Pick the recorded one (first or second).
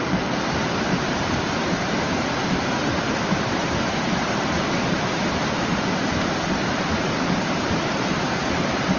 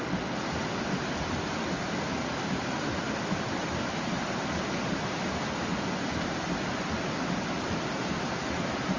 second